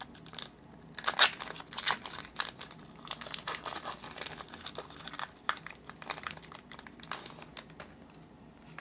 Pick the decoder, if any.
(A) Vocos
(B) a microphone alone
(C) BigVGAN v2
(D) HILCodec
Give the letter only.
B